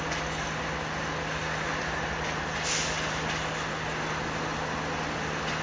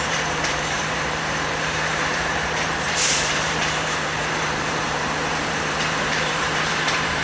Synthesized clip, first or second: second